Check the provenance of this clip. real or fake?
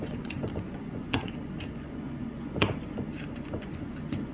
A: fake